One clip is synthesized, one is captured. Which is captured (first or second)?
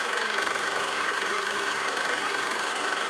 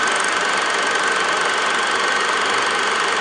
second